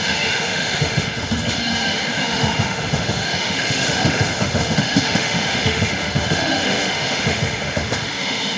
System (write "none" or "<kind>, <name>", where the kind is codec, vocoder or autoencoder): autoencoder, DAC-VAE